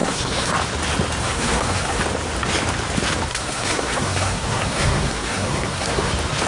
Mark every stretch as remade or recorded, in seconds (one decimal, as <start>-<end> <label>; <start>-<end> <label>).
0.0-0.5 remade; 0.5-1.2 recorded; 1.2-2.0 remade; 2.0-3.3 recorded; 3.3-6.1 remade; 6.1-6.5 recorded